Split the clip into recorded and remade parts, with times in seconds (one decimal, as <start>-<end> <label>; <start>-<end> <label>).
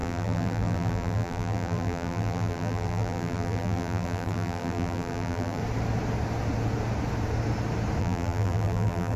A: 0.0-5.6 remade; 5.6-8.0 recorded; 8.0-9.2 remade